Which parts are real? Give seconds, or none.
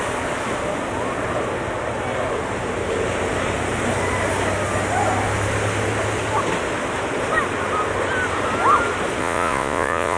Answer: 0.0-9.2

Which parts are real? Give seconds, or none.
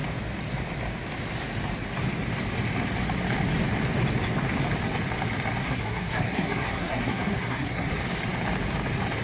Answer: 0.0-5.6; 7.9-9.2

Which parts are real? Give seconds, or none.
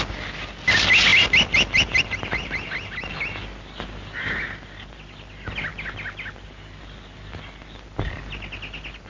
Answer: 0.0-9.1